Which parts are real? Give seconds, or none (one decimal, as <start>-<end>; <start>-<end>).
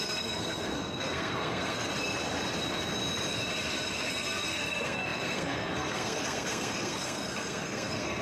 1.9-4.1